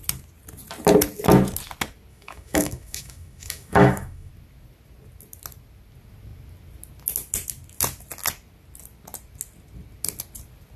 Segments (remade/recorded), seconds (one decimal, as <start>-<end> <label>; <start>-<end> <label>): 0.0-2.1 recorded; 2.1-4.3 remade; 4.3-10.8 recorded